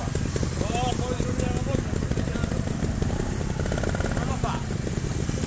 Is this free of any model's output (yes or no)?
yes